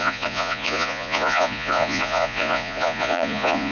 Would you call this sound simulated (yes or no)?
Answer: yes